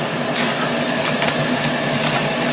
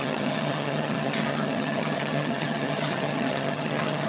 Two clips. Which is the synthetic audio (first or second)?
second